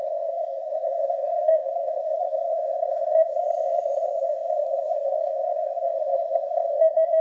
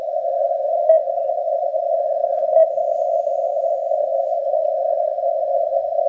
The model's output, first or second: first